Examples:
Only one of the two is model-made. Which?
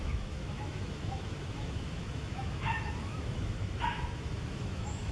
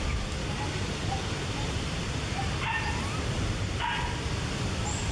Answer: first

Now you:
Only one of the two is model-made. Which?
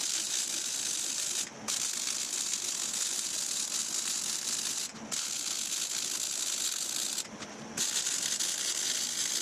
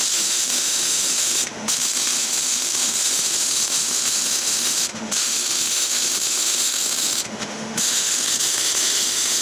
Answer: second